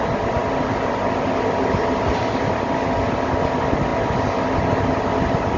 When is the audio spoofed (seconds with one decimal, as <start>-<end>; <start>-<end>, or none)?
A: none